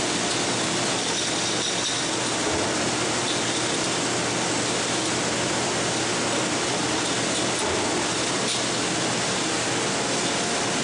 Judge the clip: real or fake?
real